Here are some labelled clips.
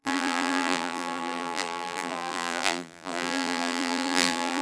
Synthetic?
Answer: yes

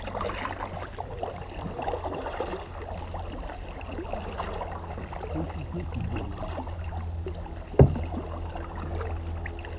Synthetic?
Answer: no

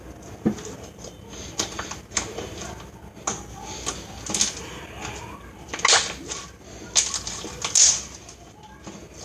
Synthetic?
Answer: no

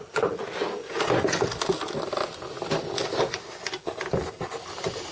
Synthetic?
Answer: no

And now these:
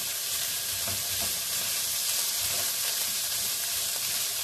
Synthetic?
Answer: yes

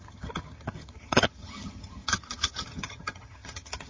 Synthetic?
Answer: yes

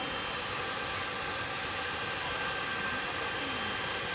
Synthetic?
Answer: no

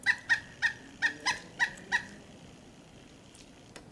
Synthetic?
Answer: yes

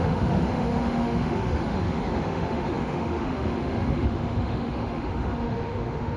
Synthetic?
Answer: yes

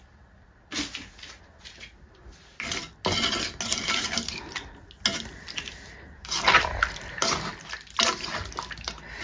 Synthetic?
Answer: no